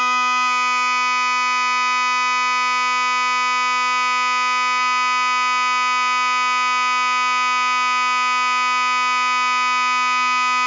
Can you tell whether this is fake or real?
real